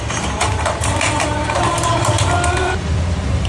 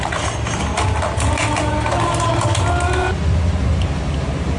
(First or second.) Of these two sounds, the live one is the second